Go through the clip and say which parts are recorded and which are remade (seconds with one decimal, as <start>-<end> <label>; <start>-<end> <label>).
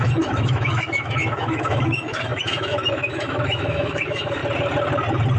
0.0-4.4 remade; 4.4-5.4 recorded